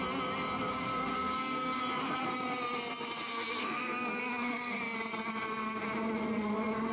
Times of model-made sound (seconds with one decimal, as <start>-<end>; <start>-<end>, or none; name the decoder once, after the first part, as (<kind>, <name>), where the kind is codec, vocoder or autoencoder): 0.7-1.8 (codec, SNAC); 3.3-4.8